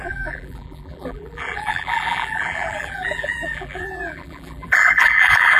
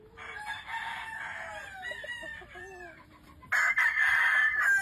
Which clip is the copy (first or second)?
first